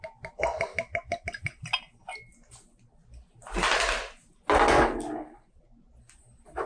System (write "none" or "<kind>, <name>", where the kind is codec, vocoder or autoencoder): none